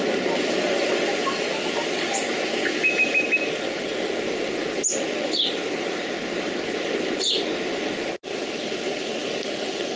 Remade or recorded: recorded